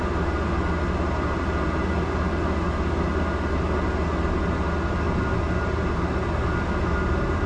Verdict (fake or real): real